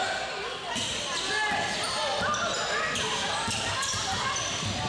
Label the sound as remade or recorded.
recorded